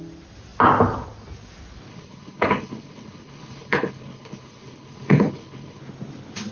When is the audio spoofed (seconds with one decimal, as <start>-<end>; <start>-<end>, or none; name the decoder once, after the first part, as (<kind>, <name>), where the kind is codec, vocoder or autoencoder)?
1.9-5.8 (codec, HILCodec)

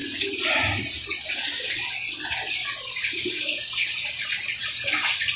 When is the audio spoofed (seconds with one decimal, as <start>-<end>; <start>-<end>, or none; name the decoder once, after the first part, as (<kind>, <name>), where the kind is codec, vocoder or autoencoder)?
none

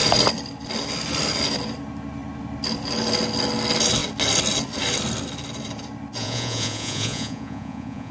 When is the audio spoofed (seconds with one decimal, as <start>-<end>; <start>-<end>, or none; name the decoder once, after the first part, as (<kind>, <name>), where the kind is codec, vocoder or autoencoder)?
6.2-8.1 (vocoder, Vocos)